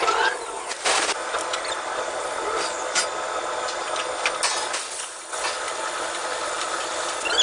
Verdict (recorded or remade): recorded